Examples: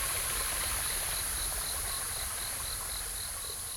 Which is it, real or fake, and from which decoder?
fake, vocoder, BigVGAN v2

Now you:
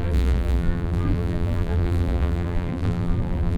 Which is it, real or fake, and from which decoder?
fake, vocoder, BigVGAN v2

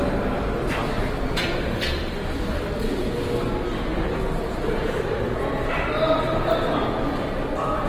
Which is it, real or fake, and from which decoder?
real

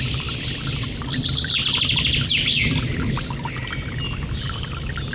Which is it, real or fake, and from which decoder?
fake, vocoder, BigVGAN v2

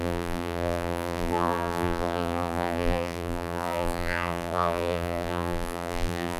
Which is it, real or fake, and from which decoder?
fake, vocoder, BigVGAN v2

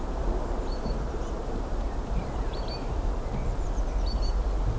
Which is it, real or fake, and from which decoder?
fake, vocoder, BigVGAN v2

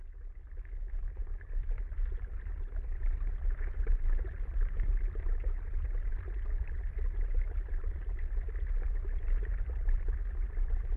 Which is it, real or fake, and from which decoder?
fake, vocoder, BigVGAN v2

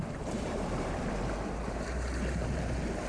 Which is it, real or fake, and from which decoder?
fake, vocoder, BigVGAN v2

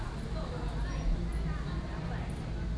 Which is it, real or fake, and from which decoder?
real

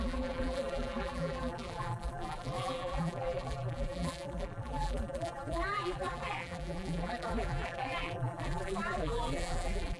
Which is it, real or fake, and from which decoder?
fake, vocoder, BigVGAN v2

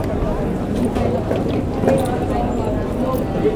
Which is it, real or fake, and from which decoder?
real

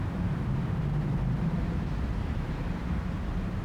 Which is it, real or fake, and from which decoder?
fake, vocoder, BigVGAN v2